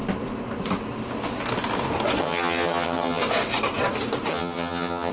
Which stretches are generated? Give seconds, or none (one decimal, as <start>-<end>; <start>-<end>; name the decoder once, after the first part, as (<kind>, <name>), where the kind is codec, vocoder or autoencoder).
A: 2.2-3.2 (vocoder, HiFi-GAN); 4.3-5.1